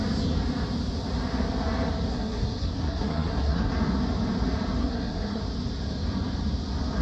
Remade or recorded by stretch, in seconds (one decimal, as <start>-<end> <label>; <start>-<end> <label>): 0.0-2.1 recorded; 2.1-3.7 remade; 3.7-4.8 recorded; 4.8-5.4 remade; 5.4-7.0 recorded